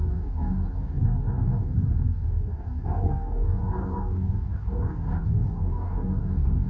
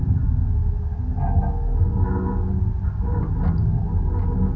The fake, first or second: first